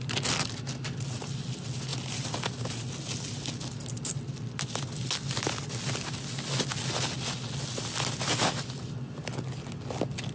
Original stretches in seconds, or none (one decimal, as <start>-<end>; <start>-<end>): 0.0-10.3